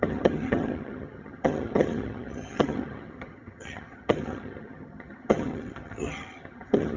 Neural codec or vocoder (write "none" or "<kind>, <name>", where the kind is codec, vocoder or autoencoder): vocoder, HiFi-GAN